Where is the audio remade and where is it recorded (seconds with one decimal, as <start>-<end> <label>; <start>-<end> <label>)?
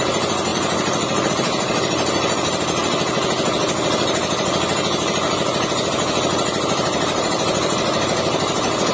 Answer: 0.0-2.8 remade; 2.8-5.9 recorded; 5.9-8.9 remade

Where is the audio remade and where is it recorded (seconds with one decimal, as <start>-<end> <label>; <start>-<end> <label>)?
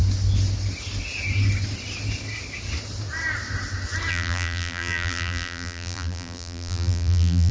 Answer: 0.0-4.1 recorded; 4.1-7.5 remade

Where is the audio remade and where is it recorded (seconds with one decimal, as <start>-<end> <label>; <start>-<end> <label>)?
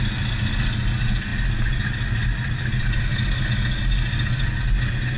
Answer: 0.0-5.2 recorded